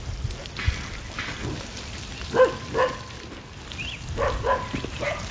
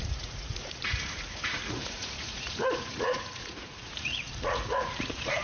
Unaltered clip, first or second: first